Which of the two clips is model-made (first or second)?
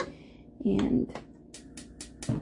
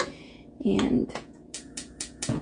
second